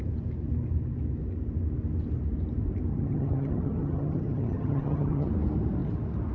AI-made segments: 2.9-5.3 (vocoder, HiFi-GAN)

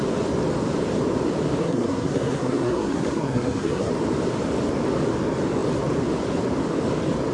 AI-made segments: 1.6-3.9 (codec, SNAC)

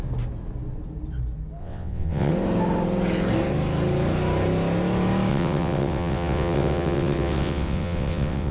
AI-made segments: 1.6-2.3 (vocoder, WaveNeXt); 5.3-8.5

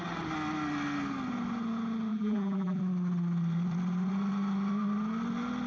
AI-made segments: 2.1-2.8 (vocoder, BigVGAN v2)

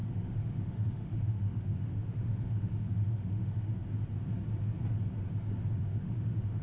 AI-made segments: 0.0-3.7 (autoencoder, DAC-VAE); 5.8-6.6

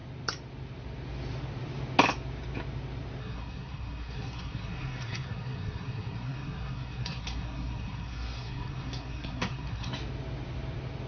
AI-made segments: 3.2-9.9 (codec, SNAC)